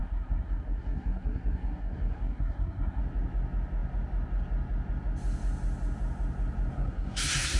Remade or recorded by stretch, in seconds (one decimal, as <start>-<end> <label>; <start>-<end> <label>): 0.0-3.0 remade; 3.0-6.7 recorded; 6.7-7.6 remade